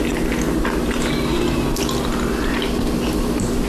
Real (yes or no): yes